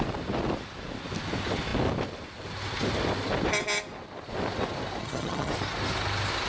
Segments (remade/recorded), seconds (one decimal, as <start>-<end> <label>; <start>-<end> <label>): 0.0-5.0 recorded; 5.0-5.5 remade; 5.5-6.5 recorded